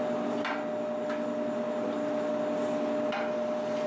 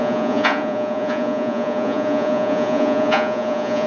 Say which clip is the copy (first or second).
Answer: second